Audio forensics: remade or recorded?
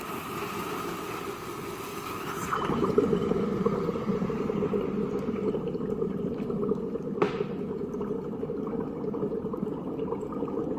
recorded